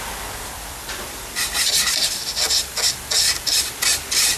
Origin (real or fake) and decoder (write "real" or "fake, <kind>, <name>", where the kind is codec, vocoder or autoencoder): fake, vocoder, BigVGAN v2